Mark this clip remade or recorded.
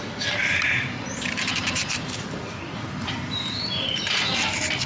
remade